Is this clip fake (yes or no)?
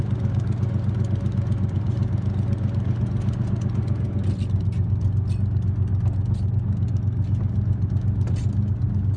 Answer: no